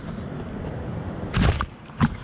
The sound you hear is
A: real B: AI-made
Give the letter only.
A